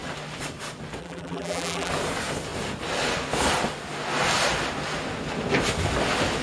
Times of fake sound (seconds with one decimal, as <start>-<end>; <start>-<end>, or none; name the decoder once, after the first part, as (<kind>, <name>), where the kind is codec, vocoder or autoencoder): 1.0-1.9 (vocoder, BigVGAN v2)